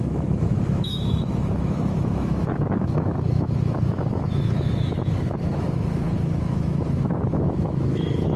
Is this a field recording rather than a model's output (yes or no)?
no